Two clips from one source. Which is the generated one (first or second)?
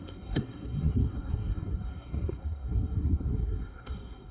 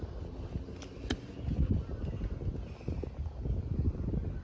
first